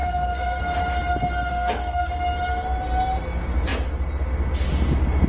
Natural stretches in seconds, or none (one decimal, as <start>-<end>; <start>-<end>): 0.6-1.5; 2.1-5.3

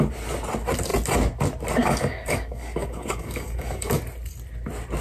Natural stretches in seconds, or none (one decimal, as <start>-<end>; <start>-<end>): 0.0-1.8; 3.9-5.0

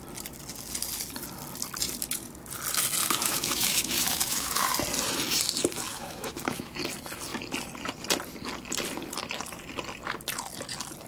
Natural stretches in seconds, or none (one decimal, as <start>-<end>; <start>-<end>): 0.0-3.0; 4.7-5.9; 6.8-11.1

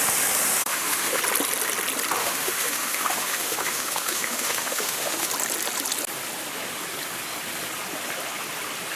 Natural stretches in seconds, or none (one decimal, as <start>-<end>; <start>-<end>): 0.0-0.6; 1.2-2.2; 5.3-9.0

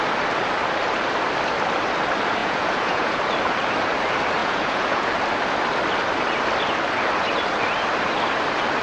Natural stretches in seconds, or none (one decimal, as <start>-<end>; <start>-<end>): 0.0-2.4; 3.2-4.4; 5.1-8.8